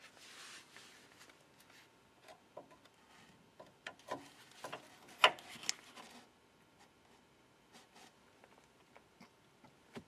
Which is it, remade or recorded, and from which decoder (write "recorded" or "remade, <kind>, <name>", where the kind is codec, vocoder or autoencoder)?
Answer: recorded